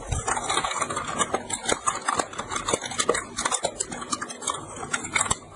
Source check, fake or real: real